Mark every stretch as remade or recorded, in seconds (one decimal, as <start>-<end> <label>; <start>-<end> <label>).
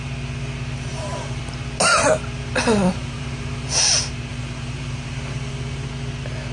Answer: 0.0-0.9 recorded; 0.9-1.4 remade; 1.4-2.9 recorded; 2.9-3.9 remade; 3.9-4.3 recorded; 4.3-5.9 remade; 5.9-6.5 recorded